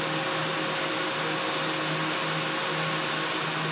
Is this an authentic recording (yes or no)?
yes